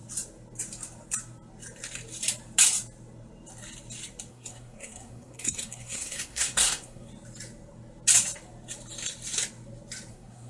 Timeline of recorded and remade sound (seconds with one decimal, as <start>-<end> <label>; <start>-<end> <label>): 0.0-4.3 recorded; 4.3-7.1 remade; 7.1-10.1 recorded; 10.1-10.5 remade